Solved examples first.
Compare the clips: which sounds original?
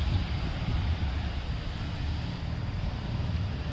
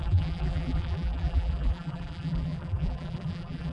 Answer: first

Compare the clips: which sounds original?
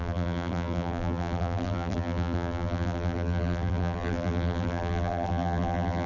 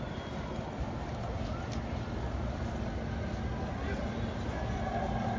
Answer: second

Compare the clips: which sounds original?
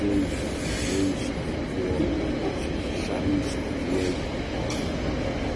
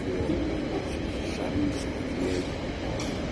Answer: first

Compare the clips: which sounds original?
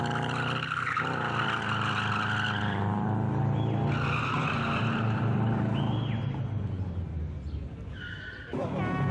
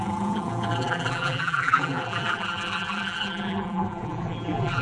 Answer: first